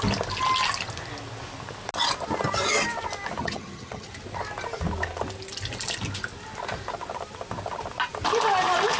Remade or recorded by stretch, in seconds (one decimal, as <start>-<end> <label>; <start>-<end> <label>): 0.0-3.4 recorded; 3.4-4.1 remade; 4.1-9.0 recorded